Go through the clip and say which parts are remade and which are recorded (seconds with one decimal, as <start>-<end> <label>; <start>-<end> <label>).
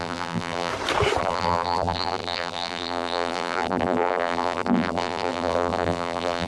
0.0-0.7 remade; 0.7-1.2 recorded; 1.2-6.5 remade